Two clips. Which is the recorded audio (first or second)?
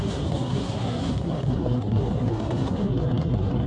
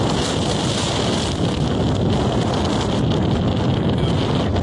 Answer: second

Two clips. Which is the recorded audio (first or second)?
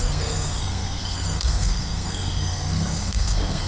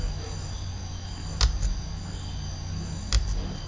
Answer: second